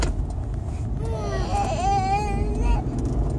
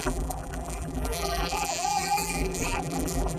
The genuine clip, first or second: first